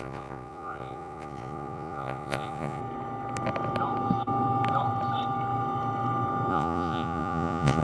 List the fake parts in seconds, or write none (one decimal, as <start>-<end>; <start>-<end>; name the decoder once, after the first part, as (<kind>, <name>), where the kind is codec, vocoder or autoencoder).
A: 0.0-2.8 (vocoder, Vocos); 6.5-7.8